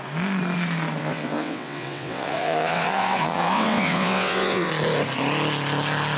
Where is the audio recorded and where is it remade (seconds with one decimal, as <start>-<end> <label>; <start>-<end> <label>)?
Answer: 0.0-1.0 recorded; 1.0-4.7 remade; 4.7-6.2 recorded